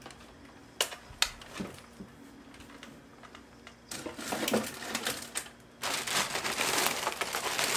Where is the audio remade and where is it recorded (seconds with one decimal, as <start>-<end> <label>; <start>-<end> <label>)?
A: 0.0-7.8 recorded